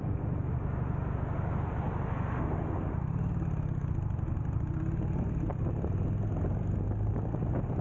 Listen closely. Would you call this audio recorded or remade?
recorded